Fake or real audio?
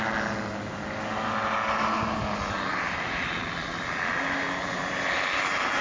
real